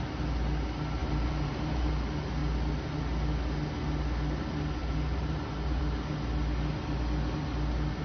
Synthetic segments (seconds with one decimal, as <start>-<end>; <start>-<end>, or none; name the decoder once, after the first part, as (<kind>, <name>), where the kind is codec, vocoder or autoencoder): 1.0-1.9 (vocoder, BigVGAN v2); 4.8-5.8